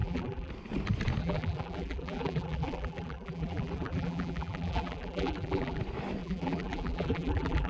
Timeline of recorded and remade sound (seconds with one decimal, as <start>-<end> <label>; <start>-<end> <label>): 0.0-0.5 remade; 0.5-1.2 recorded; 1.2-5.8 remade; 5.8-6.2 recorded; 6.2-7.7 remade